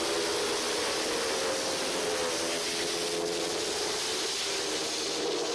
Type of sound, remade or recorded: recorded